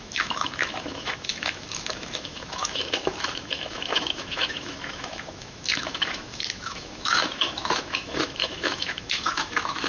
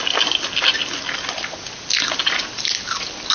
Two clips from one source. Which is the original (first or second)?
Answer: second